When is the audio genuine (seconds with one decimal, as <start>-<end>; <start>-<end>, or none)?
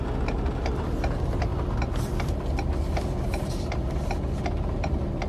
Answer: 0.0-5.3